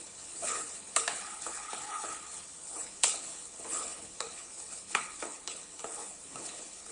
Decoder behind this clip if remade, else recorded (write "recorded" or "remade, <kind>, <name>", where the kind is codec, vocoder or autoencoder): remade, codec, HILCodec